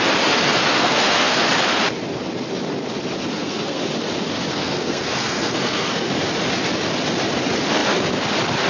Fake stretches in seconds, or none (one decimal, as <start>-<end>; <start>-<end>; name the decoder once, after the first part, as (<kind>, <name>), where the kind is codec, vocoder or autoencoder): 0.6-1.4 (codec, SNAC); 3.3-3.8; 4.5-6.1